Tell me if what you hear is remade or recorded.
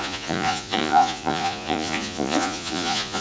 remade